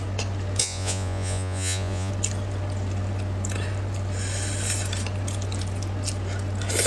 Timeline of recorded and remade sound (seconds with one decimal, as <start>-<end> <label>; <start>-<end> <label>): 0.0-0.6 recorded; 0.6-2.1 remade; 2.1-6.9 recorded